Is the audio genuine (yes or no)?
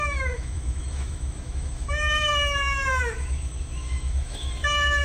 no